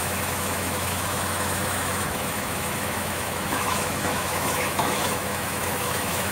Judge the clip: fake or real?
fake